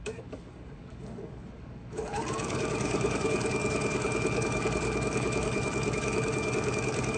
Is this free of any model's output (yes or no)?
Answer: no